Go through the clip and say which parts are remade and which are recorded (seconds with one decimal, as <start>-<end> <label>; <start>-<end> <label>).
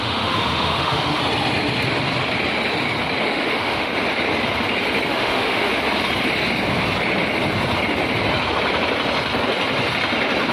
0.0-1.2 remade; 1.2-3.2 recorded; 3.2-3.9 remade; 3.9-5.1 recorded; 5.1-5.7 remade; 5.7-10.5 recorded